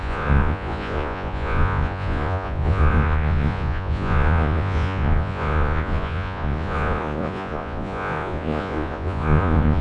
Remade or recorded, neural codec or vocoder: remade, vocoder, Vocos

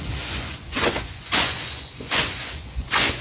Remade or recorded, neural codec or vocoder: remade, vocoder, Vocos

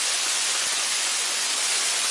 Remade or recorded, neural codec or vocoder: remade, vocoder, Vocos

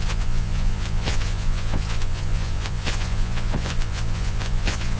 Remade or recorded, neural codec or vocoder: remade, vocoder, Vocos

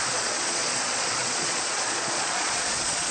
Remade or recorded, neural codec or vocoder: remade, vocoder, Vocos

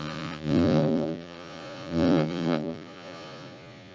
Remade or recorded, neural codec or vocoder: remade, vocoder, Vocos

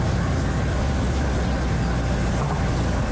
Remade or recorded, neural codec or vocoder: recorded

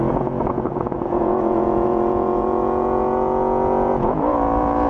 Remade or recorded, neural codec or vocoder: remade, vocoder, Vocos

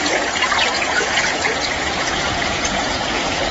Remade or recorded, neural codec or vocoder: remade, vocoder, Vocos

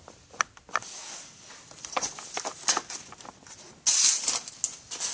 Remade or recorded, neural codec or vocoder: recorded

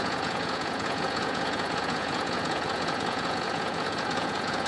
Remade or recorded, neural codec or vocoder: remade, vocoder, Vocos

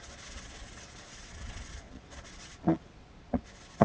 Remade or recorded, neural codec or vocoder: remade, vocoder, Vocos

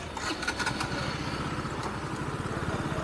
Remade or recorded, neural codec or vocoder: recorded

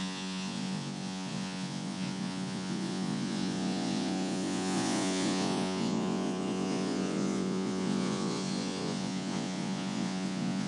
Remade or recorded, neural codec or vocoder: remade, vocoder, Vocos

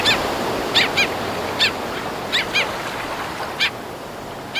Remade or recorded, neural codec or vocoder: recorded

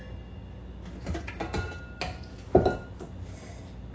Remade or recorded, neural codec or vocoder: recorded